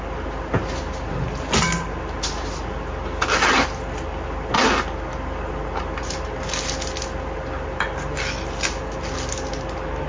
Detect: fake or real real